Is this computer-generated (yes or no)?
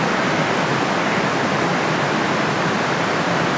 no